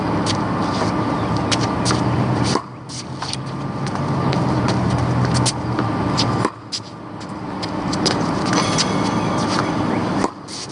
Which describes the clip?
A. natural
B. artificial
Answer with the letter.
A